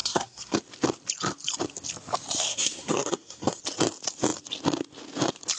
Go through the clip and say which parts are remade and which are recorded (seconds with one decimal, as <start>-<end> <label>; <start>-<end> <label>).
0.0-0.6 remade; 0.6-2.5 recorded; 2.5-3.6 remade; 3.6-5.6 recorded